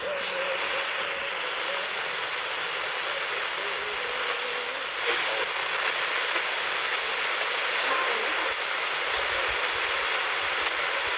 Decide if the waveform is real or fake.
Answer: real